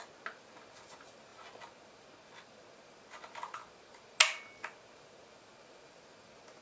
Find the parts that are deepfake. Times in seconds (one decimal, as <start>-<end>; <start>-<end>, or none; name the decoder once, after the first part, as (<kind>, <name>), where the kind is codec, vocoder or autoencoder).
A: none

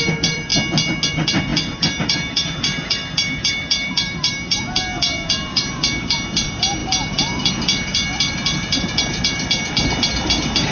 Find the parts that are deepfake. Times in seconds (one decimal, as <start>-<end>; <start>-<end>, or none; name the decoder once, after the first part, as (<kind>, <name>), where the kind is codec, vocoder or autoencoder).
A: 0.0-0.5 (vocoder, BigVGAN v2); 1.1-10.7

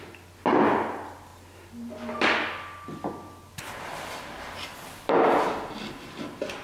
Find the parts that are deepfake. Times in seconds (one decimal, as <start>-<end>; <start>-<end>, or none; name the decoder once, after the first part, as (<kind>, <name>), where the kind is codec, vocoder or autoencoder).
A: 1.3-5.3 (vocoder, BigVGAN v2)

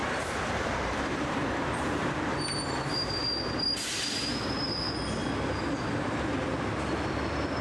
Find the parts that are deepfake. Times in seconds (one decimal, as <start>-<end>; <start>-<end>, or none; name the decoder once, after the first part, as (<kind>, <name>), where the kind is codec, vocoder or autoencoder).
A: 0.0-4.1 (vocoder, BigVGAN v2)

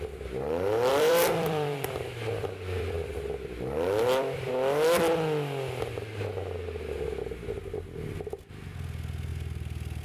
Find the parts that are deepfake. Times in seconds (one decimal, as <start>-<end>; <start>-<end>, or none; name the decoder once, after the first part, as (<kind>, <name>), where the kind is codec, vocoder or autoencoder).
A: 0.9-4.5 (vocoder, BigVGAN v2); 9.3-10.0

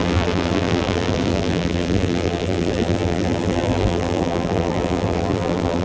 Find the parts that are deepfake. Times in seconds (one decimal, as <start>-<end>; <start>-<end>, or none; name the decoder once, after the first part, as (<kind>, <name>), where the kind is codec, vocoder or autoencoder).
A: 0.0-5.8 (vocoder, BigVGAN v2)

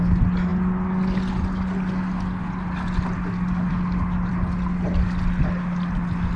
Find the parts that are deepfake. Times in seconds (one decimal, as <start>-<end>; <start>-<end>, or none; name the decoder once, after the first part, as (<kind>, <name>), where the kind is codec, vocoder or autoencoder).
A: none

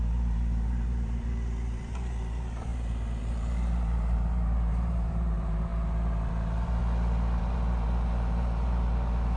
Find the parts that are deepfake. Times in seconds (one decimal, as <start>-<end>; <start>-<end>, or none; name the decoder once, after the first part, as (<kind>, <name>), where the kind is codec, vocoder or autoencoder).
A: 0.0-6.8 (vocoder, BigVGAN v2); 7.4-9.4